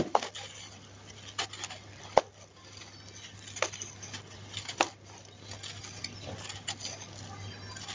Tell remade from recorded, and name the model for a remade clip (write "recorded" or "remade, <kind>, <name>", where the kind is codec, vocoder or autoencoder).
recorded